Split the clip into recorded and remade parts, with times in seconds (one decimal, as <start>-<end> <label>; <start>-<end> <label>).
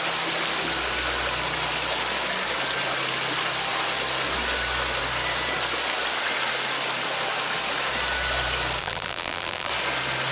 0.0-8.8 recorded; 8.8-9.7 remade; 9.7-10.3 recorded